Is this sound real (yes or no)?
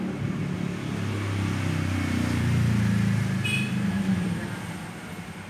yes